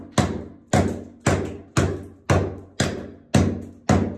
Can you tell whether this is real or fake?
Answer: real